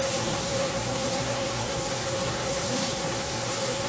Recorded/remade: remade